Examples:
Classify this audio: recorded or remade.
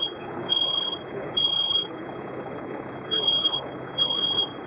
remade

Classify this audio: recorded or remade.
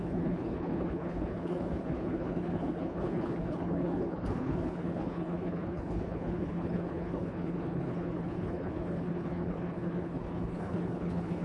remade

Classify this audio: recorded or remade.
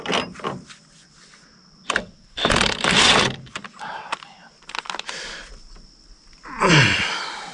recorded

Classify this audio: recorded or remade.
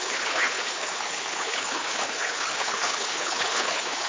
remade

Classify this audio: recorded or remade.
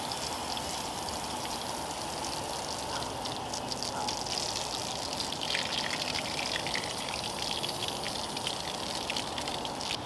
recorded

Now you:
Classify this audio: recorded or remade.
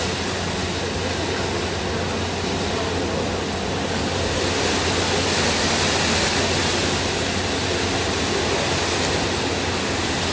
recorded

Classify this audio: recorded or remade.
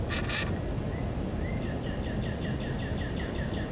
recorded